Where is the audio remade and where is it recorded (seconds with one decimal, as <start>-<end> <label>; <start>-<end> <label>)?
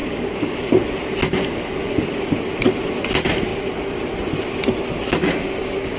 0.0-0.7 remade; 0.7-5.0 recorded; 5.0-6.0 remade